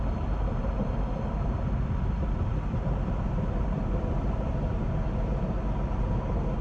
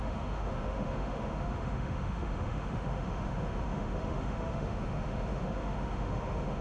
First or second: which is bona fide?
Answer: first